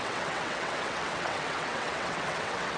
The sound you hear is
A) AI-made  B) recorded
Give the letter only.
A